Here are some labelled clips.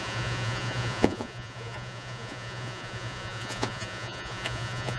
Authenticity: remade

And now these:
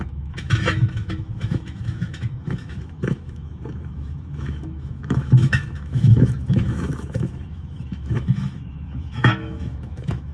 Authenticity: remade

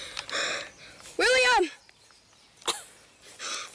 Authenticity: recorded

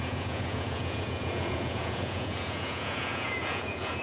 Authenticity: remade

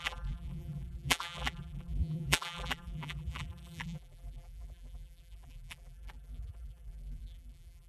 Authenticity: remade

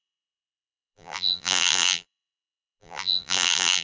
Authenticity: remade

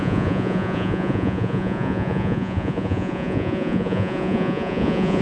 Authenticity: remade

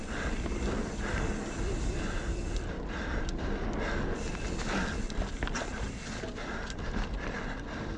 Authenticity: recorded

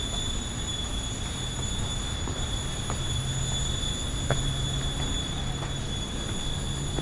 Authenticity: recorded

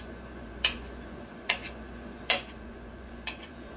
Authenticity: remade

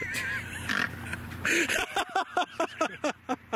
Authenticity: recorded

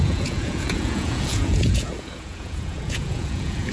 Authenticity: remade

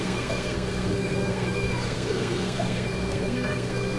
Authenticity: remade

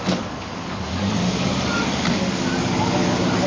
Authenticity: remade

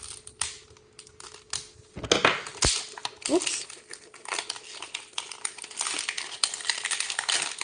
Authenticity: recorded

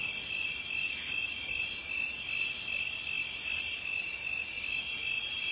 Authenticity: recorded